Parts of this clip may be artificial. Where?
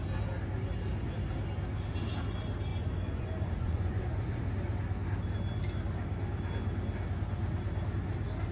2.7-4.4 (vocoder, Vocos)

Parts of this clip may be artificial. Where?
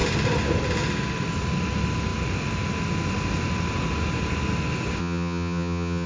5.0-6.1 (vocoder, HiFi-GAN)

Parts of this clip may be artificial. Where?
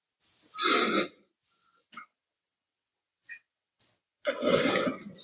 1.6-4.7 (vocoder, WaveNeXt)